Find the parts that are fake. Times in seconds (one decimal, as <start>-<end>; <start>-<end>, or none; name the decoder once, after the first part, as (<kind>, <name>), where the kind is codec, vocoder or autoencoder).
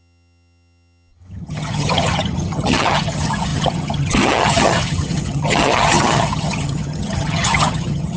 0.0-8.2 (vocoder, HiFi-GAN)